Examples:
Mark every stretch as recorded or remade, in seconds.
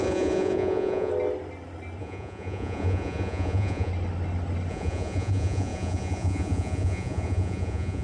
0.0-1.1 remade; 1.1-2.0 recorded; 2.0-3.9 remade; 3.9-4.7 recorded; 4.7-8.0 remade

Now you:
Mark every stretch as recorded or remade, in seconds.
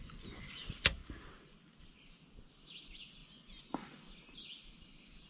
0.0-0.5 remade; 0.5-3.2 recorded; 3.2-4.1 remade; 4.1-5.3 recorded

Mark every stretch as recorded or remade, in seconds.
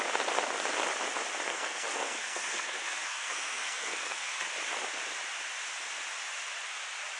0.0-1.5 recorded; 1.5-4.5 remade; 4.5-7.2 recorded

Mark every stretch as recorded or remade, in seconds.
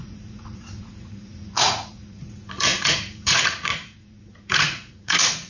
0.0-5.5 remade